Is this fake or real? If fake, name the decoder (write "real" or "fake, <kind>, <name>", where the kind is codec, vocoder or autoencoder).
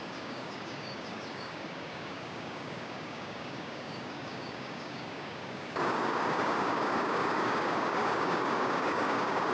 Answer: fake, codec, DAC